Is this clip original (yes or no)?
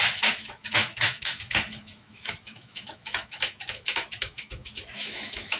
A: no